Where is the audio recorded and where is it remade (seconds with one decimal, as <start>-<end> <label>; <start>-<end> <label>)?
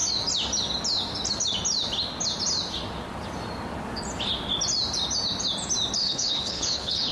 0.0-6.0 recorded; 6.0-7.1 remade